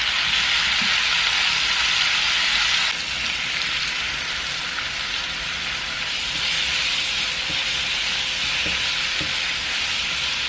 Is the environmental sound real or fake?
real